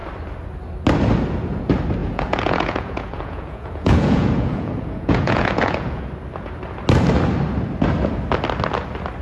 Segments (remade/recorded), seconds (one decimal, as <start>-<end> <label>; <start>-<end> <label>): 0.0-2.0 recorded; 2.0-6.0 remade; 6.0-9.2 recorded